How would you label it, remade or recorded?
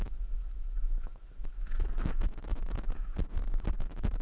remade